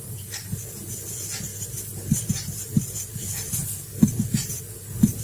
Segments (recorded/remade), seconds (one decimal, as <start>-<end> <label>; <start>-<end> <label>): 0.0-5.2 recorded